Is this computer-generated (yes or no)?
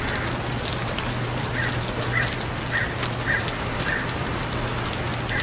no